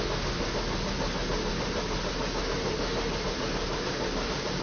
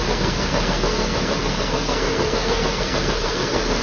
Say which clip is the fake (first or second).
second